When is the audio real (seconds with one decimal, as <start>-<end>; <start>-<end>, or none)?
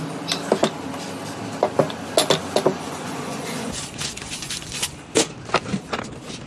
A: 0.0-2.7; 5.0-6.5